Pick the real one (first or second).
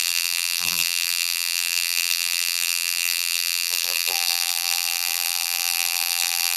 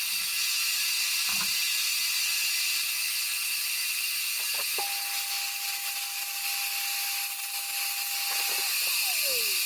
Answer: second